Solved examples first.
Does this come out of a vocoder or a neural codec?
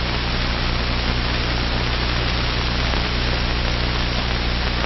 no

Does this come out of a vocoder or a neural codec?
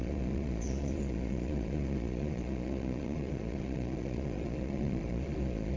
yes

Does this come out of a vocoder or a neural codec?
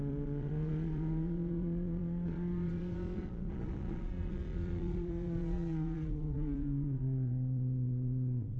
yes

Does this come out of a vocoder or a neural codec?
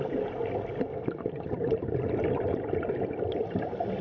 no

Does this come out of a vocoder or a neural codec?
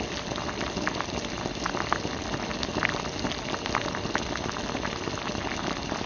no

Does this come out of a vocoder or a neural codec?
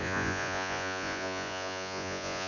yes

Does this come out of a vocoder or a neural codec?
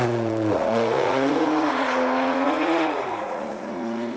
yes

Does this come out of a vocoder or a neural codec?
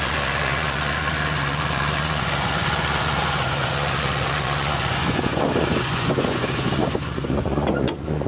yes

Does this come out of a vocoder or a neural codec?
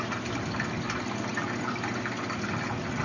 no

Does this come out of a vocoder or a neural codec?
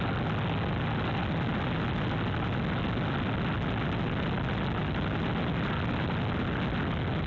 no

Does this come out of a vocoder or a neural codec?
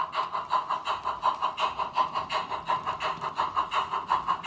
no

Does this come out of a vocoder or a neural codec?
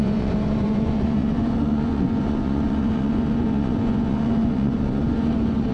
yes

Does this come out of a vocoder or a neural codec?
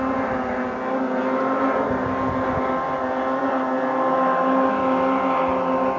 no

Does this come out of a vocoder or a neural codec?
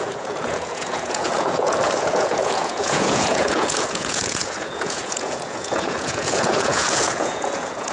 yes